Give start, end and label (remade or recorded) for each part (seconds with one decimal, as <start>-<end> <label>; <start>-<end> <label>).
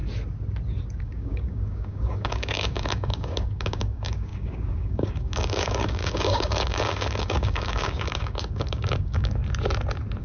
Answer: 0.0-1.0 recorded; 1.0-9.4 remade; 9.4-10.2 recorded